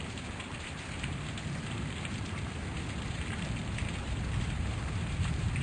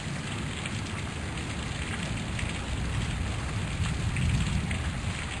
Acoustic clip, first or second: second